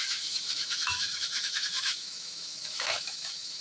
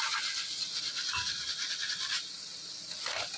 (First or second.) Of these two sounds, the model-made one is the first